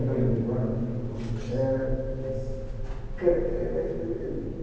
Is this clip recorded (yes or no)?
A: yes